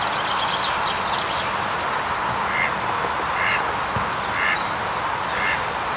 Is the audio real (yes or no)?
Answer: yes